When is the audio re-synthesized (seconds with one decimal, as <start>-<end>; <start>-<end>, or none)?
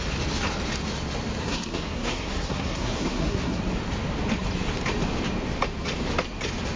1.4-3.6